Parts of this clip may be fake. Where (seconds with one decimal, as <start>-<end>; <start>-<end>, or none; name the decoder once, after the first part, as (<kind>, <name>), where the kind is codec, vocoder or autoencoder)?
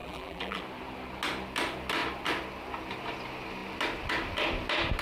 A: 0.0-0.6 (vocoder, BigVGAN v2)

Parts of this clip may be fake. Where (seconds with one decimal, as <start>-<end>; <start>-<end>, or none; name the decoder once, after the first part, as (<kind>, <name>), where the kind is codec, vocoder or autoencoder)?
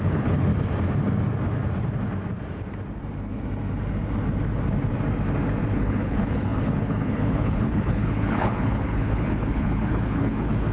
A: 0.0-0.5 (codec, HILCodec); 5.7-10.7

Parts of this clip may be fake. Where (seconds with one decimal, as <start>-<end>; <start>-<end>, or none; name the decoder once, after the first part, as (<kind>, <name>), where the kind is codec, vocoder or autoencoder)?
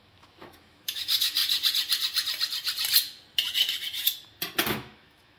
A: 0.0-1.4 (autoencoder, DAC-VAE); 4.6-5.4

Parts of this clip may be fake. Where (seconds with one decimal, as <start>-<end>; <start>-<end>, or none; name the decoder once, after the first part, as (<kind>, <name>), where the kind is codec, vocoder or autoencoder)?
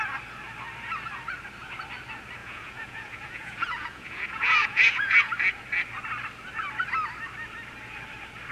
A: 2.4-5.3 (vocoder, Vocos)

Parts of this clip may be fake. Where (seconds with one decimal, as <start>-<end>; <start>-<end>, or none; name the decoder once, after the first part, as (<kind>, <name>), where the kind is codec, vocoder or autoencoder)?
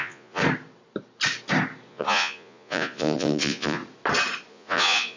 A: 0.0-0.4 (vocoder, Vocos); 1.9-3.8; 4.5-5.2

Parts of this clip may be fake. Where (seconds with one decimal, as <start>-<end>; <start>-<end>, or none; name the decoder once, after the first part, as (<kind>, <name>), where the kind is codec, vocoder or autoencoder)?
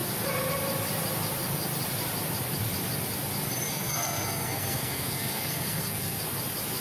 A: 3.7-6.2 (codec, SNAC)